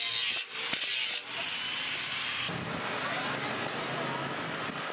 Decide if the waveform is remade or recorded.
recorded